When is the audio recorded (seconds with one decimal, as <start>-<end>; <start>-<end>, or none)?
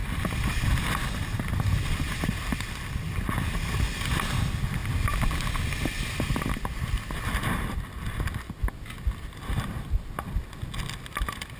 0.0-11.6